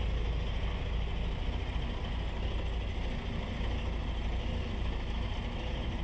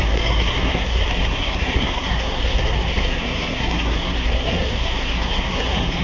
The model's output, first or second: second